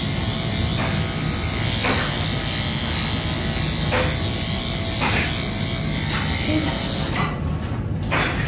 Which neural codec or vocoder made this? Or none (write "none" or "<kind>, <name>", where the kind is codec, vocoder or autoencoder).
none